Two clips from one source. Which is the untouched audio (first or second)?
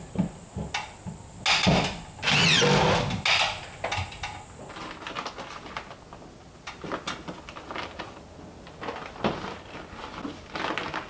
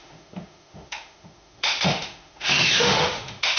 first